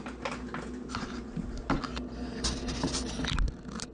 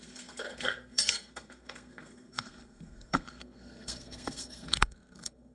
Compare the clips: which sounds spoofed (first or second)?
second